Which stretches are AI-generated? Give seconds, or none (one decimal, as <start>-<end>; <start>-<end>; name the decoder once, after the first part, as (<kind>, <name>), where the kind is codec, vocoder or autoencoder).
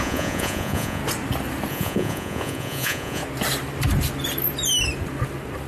0.0-1.0 (vocoder, Vocos); 1.7-3.2